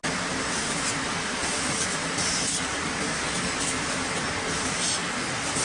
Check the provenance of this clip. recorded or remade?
recorded